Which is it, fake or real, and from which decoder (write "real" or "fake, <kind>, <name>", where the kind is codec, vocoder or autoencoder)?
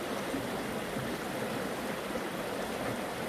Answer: real